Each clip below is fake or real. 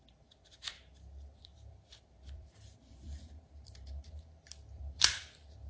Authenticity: fake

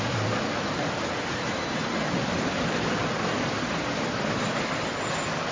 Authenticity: real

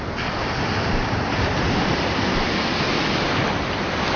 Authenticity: real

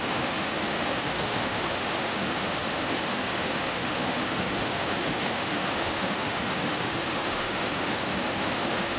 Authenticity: fake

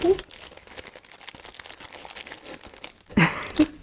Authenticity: real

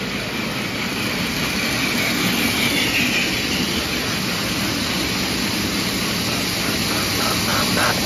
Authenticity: real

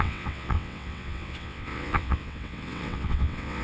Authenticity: fake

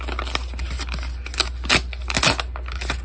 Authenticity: real